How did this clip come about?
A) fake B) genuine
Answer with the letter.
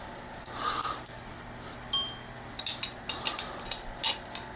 B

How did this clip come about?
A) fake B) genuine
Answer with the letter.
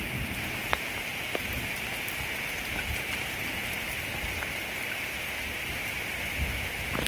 B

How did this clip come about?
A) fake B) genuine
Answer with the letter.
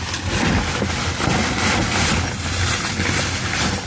B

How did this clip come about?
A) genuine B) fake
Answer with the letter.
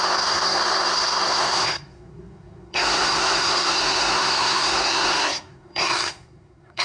B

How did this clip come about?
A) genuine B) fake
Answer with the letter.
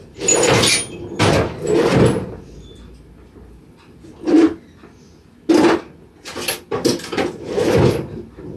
A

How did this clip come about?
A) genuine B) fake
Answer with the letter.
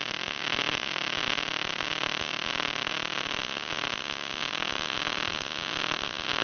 A